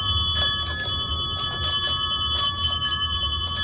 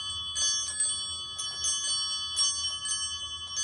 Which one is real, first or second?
second